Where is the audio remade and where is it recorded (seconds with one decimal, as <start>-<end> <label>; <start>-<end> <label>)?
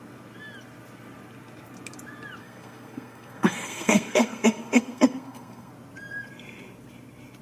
0.0-2.4 recorded; 2.4-5.7 remade; 5.7-7.4 recorded